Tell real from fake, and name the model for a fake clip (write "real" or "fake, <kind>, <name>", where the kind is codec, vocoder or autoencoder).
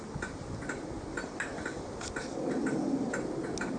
real